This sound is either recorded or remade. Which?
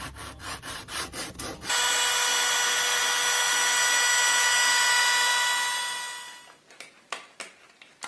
recorded